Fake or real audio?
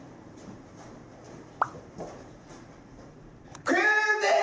fake